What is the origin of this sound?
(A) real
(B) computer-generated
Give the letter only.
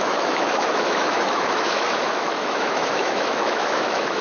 B